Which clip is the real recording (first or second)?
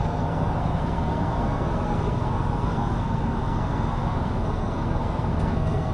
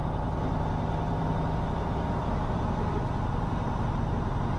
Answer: second